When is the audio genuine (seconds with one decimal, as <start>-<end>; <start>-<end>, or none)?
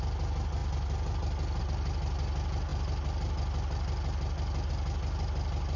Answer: 0.0-5.8